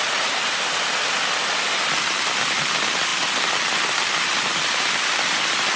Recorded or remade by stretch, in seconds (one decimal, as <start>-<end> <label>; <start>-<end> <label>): 0.0-5.8 recorded